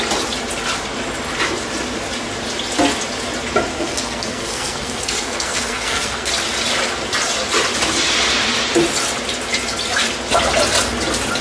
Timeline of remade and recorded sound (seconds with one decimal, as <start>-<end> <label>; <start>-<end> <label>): 0.0-3.7 recorded; 3.7-6.3 remade; 6.3-11.4 recorded